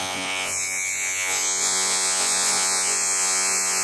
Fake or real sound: fake